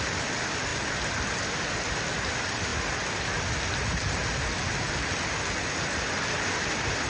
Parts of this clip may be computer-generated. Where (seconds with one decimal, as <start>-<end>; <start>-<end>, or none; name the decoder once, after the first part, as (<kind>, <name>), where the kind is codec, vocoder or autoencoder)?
none